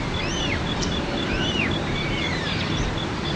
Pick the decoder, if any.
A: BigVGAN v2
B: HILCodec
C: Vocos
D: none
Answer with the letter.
A